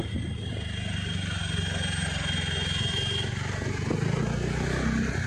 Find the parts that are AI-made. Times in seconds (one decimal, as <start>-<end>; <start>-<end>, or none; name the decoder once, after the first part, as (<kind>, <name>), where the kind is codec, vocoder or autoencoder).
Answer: none